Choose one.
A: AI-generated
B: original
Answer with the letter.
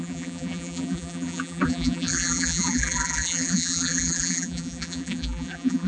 A